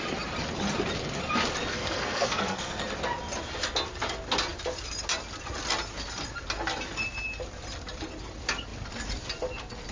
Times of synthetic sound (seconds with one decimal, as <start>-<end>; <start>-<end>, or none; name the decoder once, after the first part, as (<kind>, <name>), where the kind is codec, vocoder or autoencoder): 1.7-2.8 (codec, SNAC)